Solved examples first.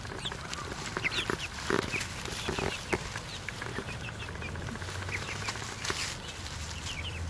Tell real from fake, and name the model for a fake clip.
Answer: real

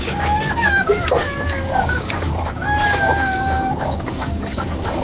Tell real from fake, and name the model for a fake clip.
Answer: fake, codec, DAC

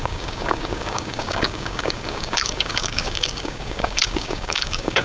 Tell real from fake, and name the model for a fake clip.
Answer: fake, codec, DAC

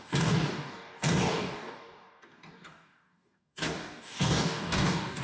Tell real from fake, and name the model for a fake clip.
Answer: fake, codec, DAC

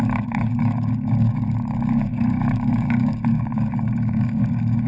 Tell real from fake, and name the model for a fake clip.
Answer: fake, codec, DAC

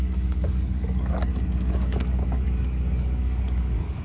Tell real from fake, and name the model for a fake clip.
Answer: fake, codec, DAC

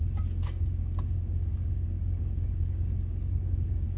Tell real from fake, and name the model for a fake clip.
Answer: fake, codec, DAC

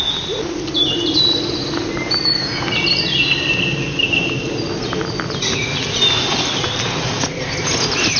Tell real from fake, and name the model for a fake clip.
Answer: real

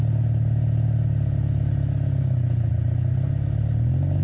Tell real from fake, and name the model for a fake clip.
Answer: real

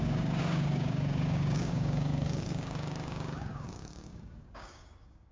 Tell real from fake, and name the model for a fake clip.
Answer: fake, codec, DAC